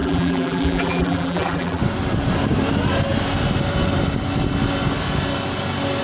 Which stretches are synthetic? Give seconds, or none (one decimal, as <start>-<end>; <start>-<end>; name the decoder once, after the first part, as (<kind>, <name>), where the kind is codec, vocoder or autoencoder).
0.0-1.8 (vocoder, BigVGAN v2)